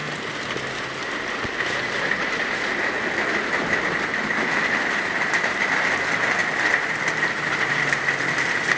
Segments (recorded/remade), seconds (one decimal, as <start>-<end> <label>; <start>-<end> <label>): 0.0-8.8 recorded